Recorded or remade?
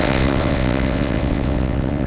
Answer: remade